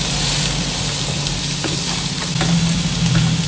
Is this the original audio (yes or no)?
yes